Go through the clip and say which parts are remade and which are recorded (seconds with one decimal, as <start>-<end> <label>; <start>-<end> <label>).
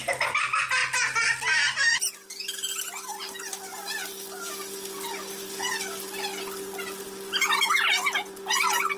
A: 0.0-9.0 recorded